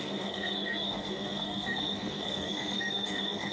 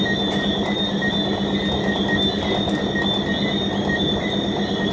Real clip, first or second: second